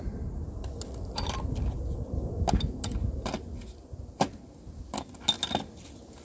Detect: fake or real real